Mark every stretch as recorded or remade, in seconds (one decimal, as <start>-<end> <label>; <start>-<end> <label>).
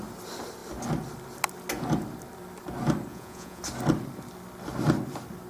0.0-3.1 recorded; 3.1-3.6 remade; 3.6-5.5 recorded